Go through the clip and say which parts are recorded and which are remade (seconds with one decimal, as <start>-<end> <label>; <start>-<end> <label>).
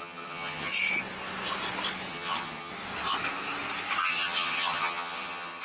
0.0-0.7 remade; 0.7-2.1 recorded; 2.1-2.7 remade; 2.7-4.0 recorded; 4.0-5.6 remade